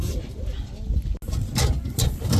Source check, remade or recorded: recorded